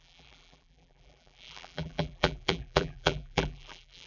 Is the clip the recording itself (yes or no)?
no